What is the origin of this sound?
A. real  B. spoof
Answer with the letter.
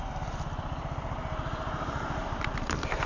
B